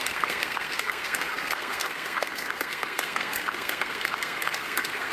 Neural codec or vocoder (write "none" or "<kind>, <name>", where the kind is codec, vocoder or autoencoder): codec, SNAC